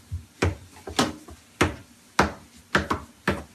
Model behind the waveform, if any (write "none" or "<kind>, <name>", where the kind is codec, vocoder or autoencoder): none